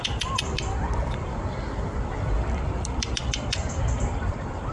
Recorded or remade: remade